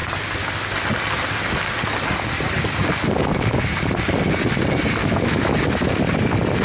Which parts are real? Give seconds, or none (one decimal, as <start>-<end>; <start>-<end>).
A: 0.0-5.0; 5.9-6.6